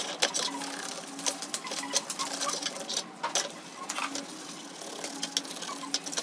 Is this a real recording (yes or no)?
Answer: yes